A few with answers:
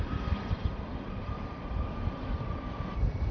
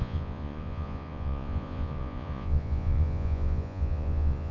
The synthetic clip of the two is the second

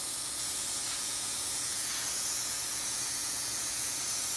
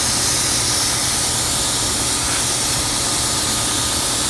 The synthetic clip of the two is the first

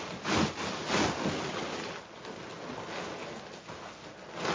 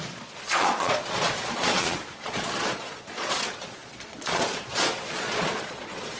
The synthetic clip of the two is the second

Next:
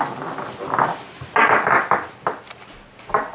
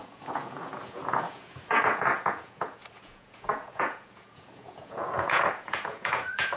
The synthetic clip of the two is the second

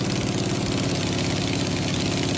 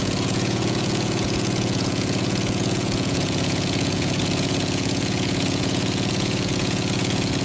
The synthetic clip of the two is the second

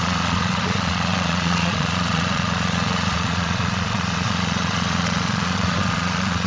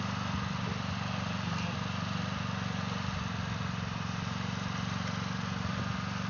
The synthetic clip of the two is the first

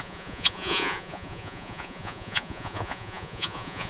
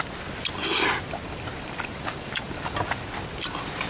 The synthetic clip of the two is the first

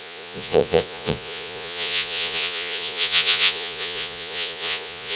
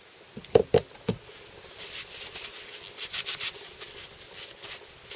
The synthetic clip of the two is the first